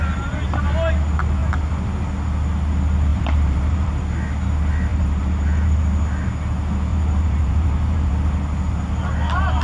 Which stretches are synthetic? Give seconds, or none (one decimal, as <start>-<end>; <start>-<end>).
3.1-3.9; 4.9-5.8; 6.9-8.1